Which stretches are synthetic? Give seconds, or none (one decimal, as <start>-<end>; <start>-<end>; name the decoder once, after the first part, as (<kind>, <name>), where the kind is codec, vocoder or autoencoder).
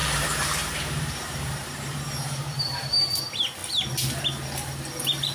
0.0-3.2 (vocoder, BigVGAN v2)